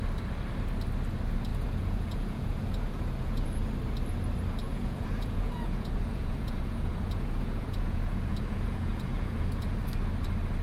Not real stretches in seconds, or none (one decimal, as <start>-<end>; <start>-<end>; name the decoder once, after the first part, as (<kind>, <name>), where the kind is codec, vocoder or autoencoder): 1.5-3.7 (vocoder, Vocos); 4.6-9.8